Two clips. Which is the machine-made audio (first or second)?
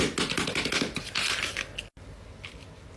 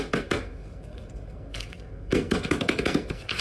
second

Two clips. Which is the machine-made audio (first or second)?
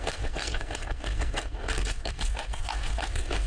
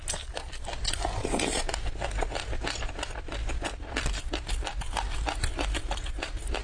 first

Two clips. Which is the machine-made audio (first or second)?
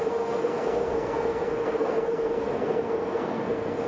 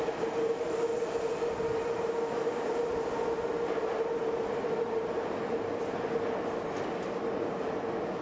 first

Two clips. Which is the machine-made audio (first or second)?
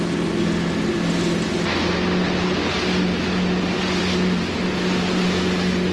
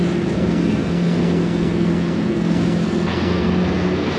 second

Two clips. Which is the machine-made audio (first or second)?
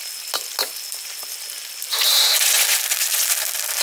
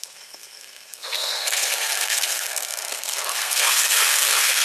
second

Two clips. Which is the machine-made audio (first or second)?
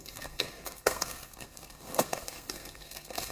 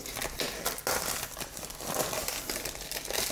first